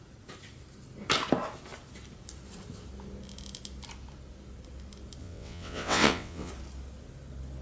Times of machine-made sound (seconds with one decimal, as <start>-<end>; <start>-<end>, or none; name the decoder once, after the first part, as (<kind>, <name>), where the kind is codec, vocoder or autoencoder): 5.2-6.5 (vocoder, WaveNeXt)

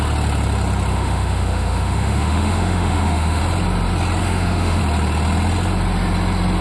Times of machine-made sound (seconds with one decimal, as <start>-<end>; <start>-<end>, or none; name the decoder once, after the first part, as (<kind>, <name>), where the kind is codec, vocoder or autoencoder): 0.9-3.4 (autoencoder, DAC-VAE); 4.2-4.8

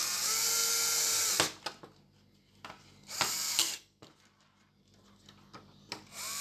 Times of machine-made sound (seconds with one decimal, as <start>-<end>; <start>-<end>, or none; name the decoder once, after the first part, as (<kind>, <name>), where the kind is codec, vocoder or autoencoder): 3.6-4.1 (codec, SNAC)